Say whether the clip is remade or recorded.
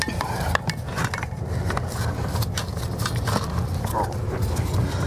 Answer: remade